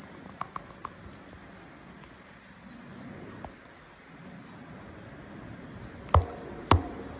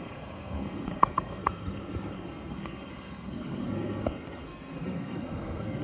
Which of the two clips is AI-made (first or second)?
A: second